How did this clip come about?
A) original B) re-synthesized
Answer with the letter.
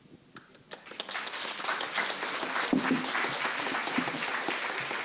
A